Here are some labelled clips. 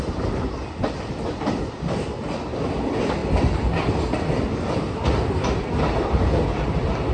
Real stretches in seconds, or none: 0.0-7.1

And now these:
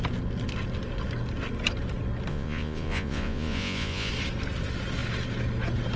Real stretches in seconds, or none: 0.0-2.3; 4.1-6.0

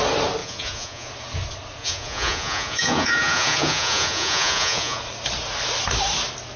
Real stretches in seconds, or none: 0.0-0.4; 1.1-1.8; 5.0-6.6

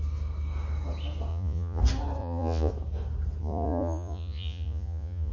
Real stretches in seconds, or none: 0.0-1.3; 1.8-2.2; 2.7-3.4

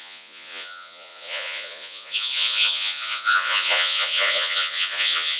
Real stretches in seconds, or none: none

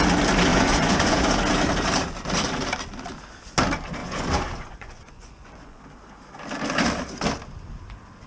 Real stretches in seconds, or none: 0.0-0.5; 1.3-4.0; 5.8-8.3

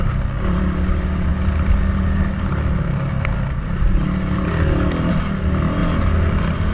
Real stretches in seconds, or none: 0.0-6.7